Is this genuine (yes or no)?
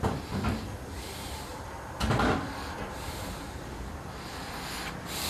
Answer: no